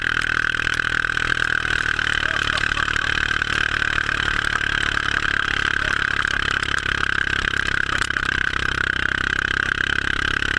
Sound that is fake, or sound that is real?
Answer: real